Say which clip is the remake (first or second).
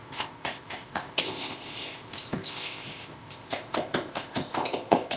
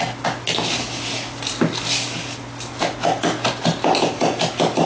first